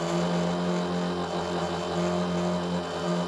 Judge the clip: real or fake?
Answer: real